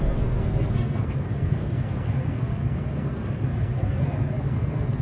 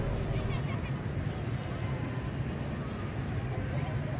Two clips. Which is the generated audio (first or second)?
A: first